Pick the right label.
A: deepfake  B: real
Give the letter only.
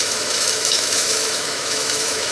A